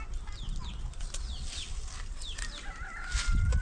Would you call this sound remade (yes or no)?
no